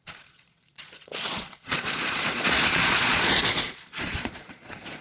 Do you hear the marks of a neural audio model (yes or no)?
yes